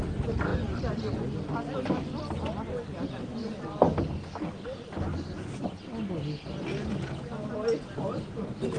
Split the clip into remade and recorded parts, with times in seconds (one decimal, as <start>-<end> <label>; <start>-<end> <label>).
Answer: 0.0-8.8 recorded